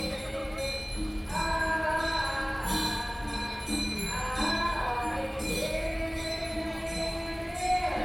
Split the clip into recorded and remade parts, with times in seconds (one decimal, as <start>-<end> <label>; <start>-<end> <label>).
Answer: 0.0-0.4 remade; 0.4-4.5 recorded; 4.5-6.4 remade; 6.4-8.0 recorded